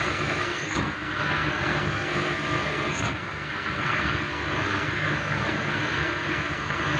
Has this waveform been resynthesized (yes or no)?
yes